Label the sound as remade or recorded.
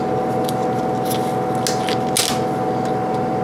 recorded